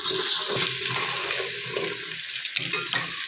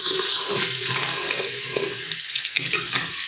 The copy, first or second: second